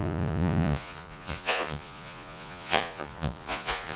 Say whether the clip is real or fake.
fake